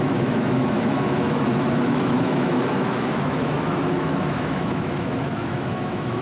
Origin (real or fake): fake